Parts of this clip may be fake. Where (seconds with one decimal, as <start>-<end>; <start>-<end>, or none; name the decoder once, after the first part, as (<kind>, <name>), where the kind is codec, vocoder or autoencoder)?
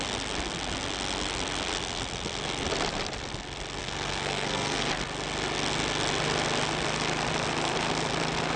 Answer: 3.8-4.9 (codec, SNAC)